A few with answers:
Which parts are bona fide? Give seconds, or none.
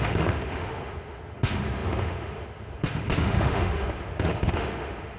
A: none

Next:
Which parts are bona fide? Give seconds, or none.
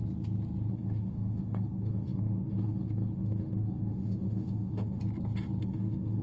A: 0.0-0.7; 5.0-5.6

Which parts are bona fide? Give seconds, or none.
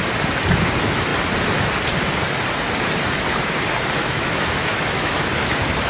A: 0.0-4.0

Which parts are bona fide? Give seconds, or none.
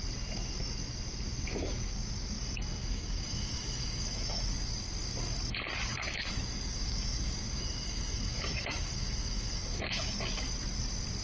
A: 0.0-2.8; 4.7-5.9; 10.1-11.2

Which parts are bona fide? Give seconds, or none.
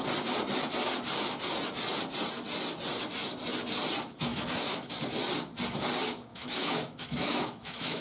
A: 0.0-4.3; 4.9-6.3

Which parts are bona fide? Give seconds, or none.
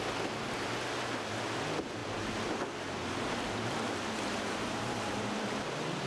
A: 0.0-6.1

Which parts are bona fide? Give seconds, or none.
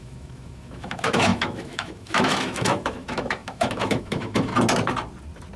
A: 4.5-5.6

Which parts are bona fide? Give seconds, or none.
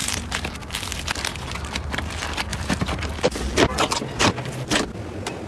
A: 0.0-5.5